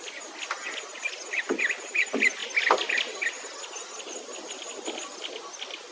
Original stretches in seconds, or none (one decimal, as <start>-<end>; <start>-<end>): 0.0-5.9